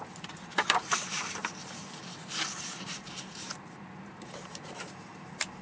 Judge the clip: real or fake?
fake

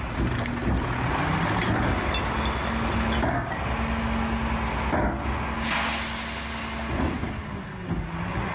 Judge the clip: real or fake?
real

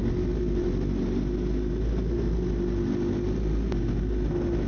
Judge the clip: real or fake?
real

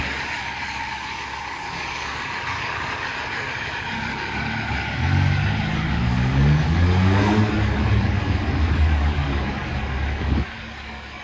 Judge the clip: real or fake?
fake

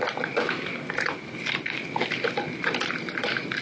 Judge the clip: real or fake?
real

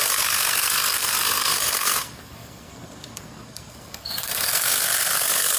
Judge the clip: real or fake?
fake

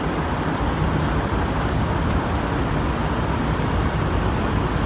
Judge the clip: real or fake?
real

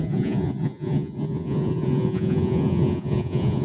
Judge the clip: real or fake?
fake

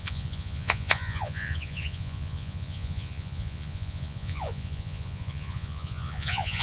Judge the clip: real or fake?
fake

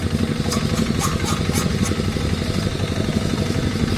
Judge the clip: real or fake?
real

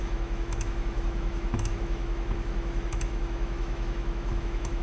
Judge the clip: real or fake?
fake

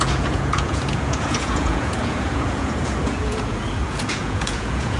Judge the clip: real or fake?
fake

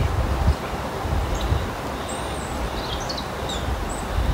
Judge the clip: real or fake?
real